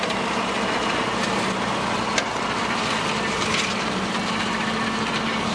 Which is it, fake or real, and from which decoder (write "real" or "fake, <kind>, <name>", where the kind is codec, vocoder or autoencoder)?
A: real